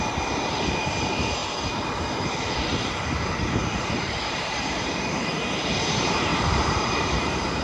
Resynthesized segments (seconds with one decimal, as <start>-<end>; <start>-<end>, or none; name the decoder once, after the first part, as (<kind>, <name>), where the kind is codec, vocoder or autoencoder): 2.7-5.3 (vocoder, BigVGAN v2); 6.3-7.6